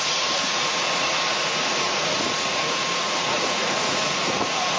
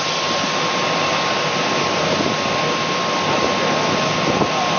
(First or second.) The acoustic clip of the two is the second